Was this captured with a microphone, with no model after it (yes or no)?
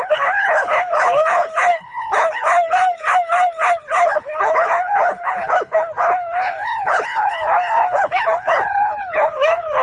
no